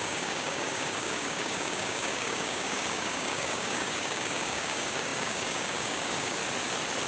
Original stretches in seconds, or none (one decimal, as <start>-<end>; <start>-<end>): 6.4-7.1